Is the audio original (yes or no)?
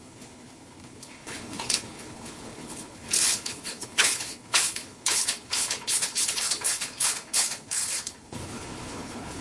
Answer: no